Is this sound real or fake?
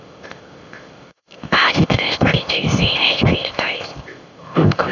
fake